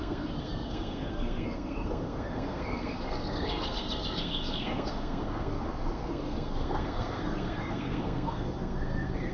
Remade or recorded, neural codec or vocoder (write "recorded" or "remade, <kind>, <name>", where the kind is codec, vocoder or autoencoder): remade, codec, SNAC